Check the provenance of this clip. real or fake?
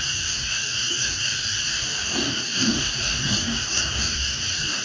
fake